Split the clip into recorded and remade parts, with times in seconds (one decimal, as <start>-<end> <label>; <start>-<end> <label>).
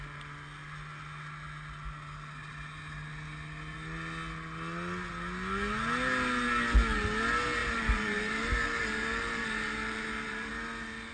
0.0-7.6 recorded; 7.6-10.5 remade; 10.5-11.1 recorded